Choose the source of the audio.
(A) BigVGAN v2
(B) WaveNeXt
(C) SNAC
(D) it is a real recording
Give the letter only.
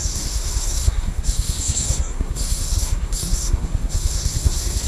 C